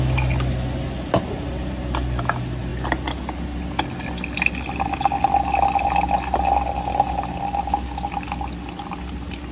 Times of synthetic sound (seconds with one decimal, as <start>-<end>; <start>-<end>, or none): none